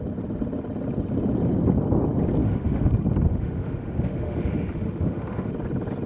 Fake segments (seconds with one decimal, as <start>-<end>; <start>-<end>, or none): 2.4-2.9; 3.3-5.5